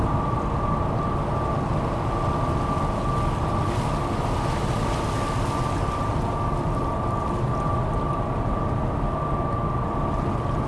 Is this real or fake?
real